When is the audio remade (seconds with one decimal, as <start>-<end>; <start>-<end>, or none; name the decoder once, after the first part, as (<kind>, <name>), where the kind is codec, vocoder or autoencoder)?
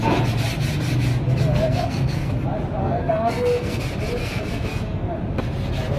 1.5-2.3 (codec, SNAC); 2.8-3.8; 4.2-5.1